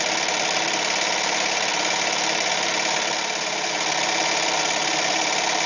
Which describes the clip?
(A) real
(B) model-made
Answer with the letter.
A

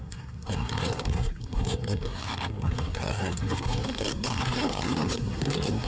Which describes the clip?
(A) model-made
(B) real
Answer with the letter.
A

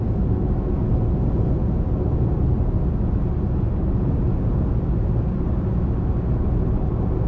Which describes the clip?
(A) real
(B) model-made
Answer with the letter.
A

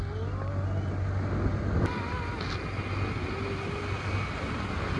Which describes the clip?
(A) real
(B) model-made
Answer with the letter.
A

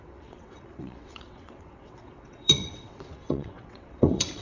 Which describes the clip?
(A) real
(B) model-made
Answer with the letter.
B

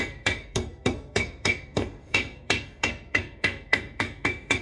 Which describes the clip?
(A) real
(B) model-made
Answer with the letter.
B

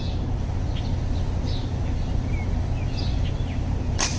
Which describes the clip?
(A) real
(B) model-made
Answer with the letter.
A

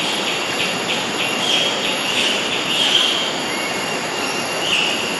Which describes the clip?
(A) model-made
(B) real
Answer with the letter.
A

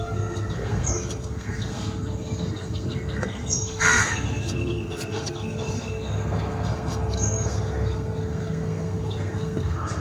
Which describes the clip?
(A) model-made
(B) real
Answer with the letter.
A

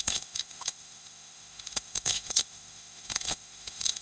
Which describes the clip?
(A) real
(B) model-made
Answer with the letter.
B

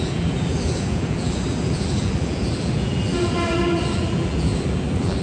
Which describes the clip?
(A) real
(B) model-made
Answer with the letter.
B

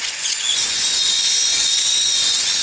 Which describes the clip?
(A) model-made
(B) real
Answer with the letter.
A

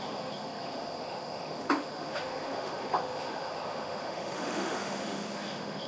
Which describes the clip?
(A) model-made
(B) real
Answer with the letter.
A